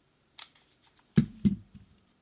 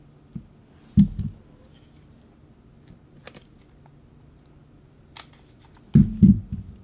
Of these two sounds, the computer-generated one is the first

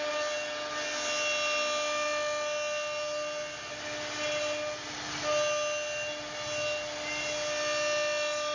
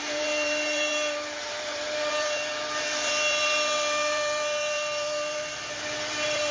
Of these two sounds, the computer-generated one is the second